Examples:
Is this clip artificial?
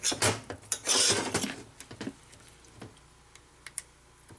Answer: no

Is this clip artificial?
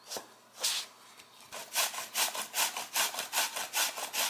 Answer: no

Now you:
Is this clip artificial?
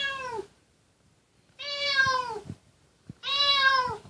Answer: yes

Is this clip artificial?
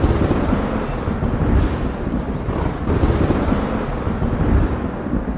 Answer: no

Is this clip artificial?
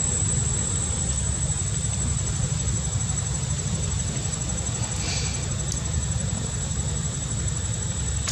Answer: no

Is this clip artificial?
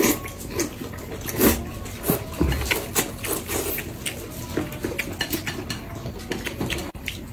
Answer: no